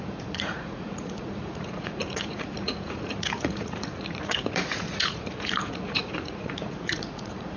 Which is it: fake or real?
fake